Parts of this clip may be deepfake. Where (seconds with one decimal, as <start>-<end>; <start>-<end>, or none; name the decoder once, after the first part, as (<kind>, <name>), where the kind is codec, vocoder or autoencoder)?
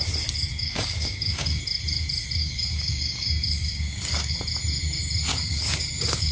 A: 0.5-1.6 (codec, DAC); 2.4-4.3; 5.3-6.3